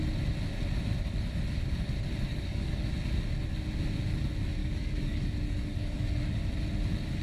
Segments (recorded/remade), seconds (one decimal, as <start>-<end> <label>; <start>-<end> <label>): 0.0-2.3 recorded; 2.3-2.9 remade; 2.9-4.6 recorded; 4.6-6.5 remade; 6.5-7.2 recorded